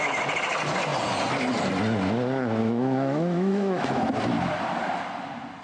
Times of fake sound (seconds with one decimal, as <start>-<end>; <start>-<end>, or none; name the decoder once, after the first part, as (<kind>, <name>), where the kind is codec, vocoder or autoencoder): 2.6-4.0 (autoencoder, DAC-VAE)